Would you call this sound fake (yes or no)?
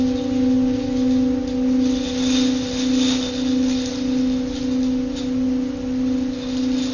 no